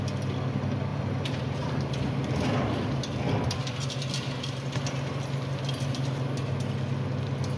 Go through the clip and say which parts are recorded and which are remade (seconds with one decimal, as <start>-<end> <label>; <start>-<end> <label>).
0.0-0.9 recorded; 0.9-1.9 remade; 1.9-7.6 recorded

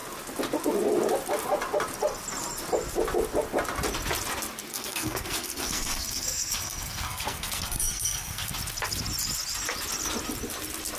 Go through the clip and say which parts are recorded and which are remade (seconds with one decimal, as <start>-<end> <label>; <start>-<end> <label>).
0.0-4.7 recorded; 4.7-8.5 remade; 8.5-11.0 recorded

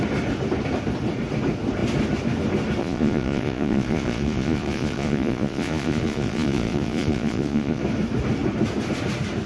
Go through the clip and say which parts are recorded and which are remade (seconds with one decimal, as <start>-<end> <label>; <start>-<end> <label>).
0.0-2.8 recorded; 2.8-7.8 remade; 7.8-9.5 recorded

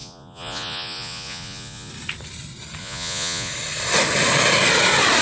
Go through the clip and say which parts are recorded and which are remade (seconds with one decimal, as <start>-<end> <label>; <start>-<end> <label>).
0.0-1.9 remade; 1.9-2.8 recorded; 2.8-3.5 remade; 3.5-5.2 recorded

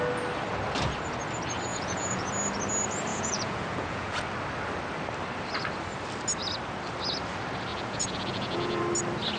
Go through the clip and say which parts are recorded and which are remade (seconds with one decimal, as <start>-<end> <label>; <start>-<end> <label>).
0.0-1.7 recorded; 1.7-2.3 remade; 2.3-3.1 recorded; 3.1-4.2 remade; 4.2-7.7 recorded; 7.7-8.8 remade; 8.8-9.4 recorded

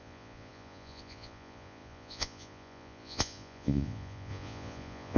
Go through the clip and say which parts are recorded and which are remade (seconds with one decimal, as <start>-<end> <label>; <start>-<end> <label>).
0.0-5.2 remade